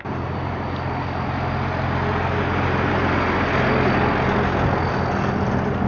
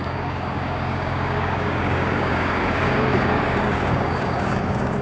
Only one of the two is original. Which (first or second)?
first